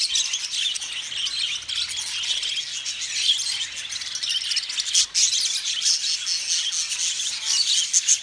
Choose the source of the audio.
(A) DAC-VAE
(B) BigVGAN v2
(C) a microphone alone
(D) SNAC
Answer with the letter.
C